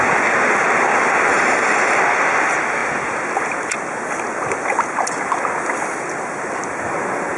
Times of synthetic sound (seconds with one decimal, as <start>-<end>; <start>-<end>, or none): 1.3-2.0